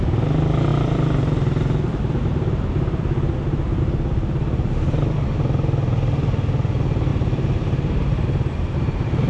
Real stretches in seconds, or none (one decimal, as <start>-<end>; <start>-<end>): 0.0-7.1